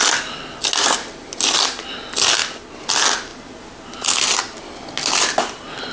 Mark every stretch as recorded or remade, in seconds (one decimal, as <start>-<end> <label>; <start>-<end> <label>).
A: 0.0-5.9 recorded